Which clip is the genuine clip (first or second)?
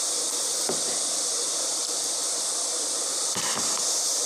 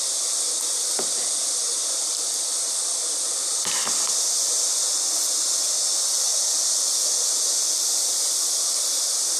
second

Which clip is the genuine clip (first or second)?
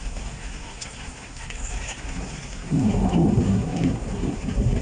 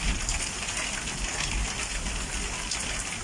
second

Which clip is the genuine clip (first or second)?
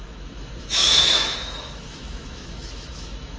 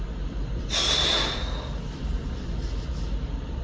second